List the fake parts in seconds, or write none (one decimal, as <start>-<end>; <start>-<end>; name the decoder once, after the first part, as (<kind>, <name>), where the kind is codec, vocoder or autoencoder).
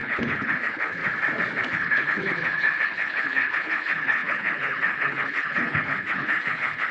0.0-1.0 (codec, HILCodec); 1.7-6.9